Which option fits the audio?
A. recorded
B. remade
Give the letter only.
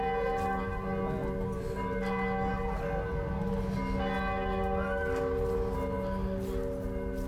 A